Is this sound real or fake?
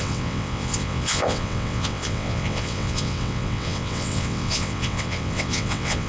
fake